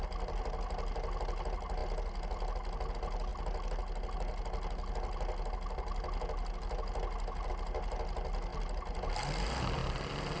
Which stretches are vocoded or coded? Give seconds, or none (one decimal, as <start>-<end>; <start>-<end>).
none